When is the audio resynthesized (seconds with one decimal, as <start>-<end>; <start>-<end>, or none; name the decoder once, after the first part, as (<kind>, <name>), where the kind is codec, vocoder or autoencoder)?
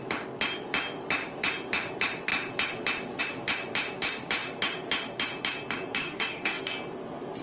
6.0-6.6 (codec, DAC)